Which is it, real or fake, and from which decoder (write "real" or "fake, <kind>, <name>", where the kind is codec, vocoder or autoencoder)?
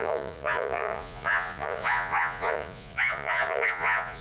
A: fake, vocoder, Vocos